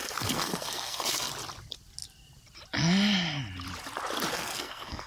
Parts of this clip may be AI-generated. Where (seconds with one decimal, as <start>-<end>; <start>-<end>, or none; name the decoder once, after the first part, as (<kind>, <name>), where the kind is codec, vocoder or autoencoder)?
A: 0.0-1.3 (codec, SNAC); 4.3-5.1